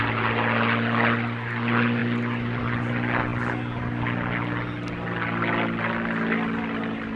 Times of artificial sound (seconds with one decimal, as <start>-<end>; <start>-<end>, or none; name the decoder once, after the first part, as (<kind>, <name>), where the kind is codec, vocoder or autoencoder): none